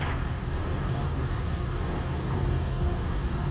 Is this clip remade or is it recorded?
remade